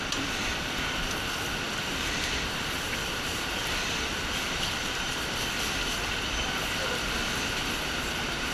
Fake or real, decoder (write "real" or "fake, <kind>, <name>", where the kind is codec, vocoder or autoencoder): fake, vocoder, BigVGAN v2